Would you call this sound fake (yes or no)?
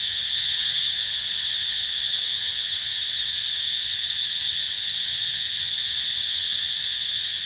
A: yes